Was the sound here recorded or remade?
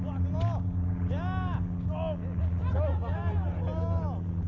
recorded